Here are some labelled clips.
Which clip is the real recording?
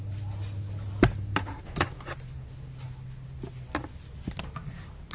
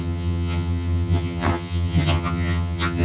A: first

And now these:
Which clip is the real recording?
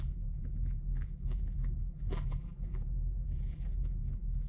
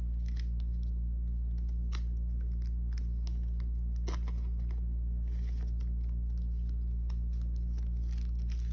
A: second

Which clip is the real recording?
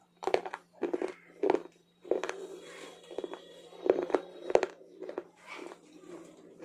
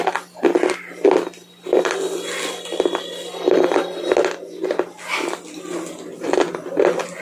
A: second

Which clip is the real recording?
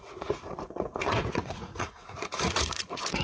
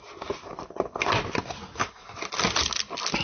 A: second